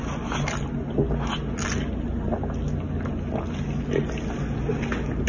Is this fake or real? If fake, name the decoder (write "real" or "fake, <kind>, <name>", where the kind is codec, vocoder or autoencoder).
real